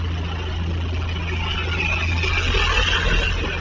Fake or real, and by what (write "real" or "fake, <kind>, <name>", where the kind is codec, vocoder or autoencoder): real